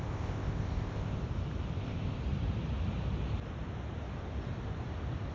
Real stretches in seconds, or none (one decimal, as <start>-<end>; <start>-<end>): 1.2-1.8; 2.2-5.3